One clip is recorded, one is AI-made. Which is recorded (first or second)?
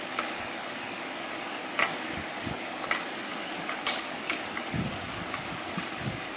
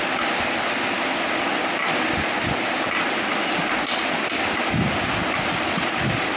second